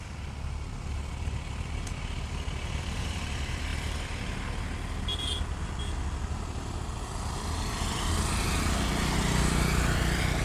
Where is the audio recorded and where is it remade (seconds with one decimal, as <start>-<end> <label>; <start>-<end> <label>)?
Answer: 0.0-10.4 recorded